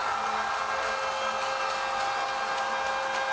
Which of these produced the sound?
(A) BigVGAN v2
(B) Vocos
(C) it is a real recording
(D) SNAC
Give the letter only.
C